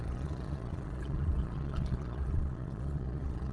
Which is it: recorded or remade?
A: remade